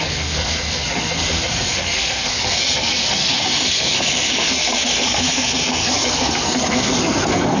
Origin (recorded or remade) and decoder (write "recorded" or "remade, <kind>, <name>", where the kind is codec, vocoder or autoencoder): remade, codec, SNAC